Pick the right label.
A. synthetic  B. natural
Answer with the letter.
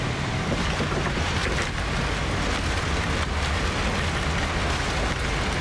B